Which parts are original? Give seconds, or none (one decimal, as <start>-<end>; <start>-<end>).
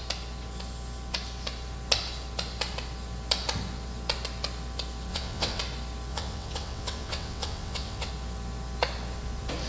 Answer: 0.0-5.1; 5.6-6.1; 8.1-9.7